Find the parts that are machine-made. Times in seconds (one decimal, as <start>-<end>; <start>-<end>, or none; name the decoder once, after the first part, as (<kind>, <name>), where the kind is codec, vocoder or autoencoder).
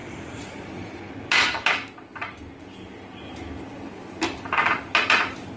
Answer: 0.0-1.1 (vocoder, Vocos)